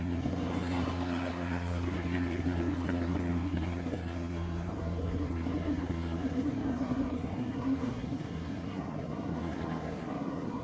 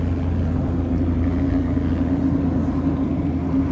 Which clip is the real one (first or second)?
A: second